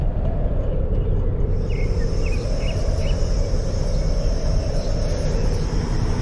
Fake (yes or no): no